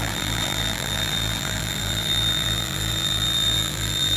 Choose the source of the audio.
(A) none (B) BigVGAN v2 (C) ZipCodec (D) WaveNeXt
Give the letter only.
B